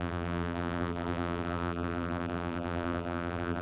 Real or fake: fake